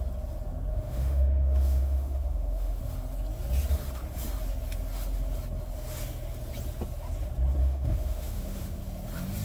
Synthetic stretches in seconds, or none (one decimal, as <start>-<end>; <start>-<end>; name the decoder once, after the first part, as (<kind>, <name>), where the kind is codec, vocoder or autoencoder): 0.7-2.8 (autoencoder, DAC-VAE); 7.6-8.8